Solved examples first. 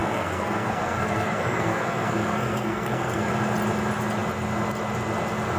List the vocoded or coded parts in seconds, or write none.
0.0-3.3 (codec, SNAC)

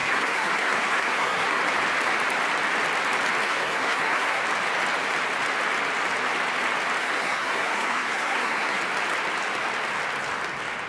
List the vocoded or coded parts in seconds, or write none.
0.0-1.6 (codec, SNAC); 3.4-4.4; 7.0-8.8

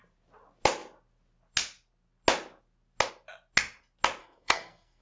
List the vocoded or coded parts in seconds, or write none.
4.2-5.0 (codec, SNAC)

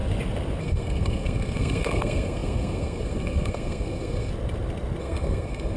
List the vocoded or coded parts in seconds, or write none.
0.6-4.3 (codec, SNAC); 5.0-5.8

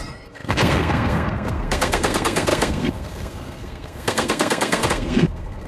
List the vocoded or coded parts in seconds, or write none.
0.0-5.7 (codec, SNAC)